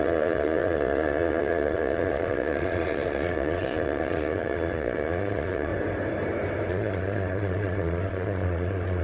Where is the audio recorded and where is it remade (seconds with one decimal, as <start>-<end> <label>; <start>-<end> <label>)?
0.0-5.7 remade; 5.7-6.7 recorded; 6.7-9.0 remade